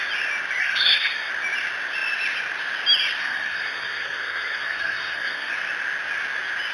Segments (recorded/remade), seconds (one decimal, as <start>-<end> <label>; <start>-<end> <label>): 0.0-0.6 recorded; 0.6-1.3 remade; 1.3-3.2 recorded; 3.2-5.5 remade; 5.5-6.7 recorded